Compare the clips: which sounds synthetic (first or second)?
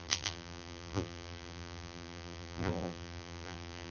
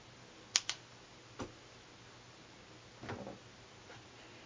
first